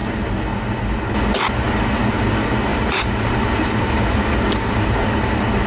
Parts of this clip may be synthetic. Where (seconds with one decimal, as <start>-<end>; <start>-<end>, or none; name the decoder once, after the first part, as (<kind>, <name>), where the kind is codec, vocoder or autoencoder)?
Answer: 2.7-4.9 (vocoder, BigVGAN v2)